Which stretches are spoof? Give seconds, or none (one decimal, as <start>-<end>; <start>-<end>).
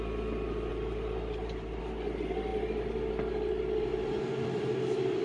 0.7-1.8; 3.9-5.2